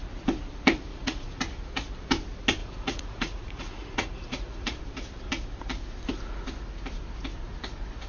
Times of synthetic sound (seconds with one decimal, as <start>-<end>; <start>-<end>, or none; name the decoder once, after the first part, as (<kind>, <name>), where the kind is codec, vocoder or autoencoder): 0.9-1.4 (vocoder, Vocos); 2.6-4.8